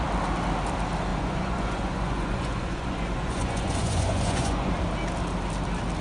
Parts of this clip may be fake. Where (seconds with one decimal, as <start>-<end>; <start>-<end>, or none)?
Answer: 1.1-4.7